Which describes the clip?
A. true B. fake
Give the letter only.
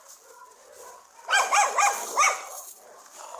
A